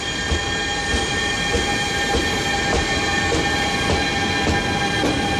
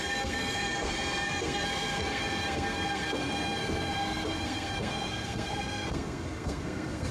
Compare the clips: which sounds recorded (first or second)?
first